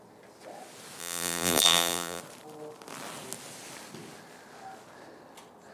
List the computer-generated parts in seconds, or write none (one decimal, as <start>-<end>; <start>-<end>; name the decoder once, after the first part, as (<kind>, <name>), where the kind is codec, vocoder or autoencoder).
1.0-2.2 (vocoder, BigVGAN v2)